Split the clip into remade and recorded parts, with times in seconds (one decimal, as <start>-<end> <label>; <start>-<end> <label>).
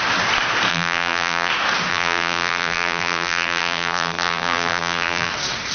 0.0-0.7 recorded; 0.7-1.5 remade; 1.5-1.9 recorded; 1.9-5.3 remade; 5.3-5.7 recorded